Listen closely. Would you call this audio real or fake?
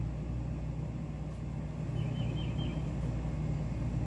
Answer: real